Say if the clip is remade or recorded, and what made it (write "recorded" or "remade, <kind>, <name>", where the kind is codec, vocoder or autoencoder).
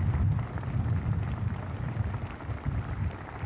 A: recorded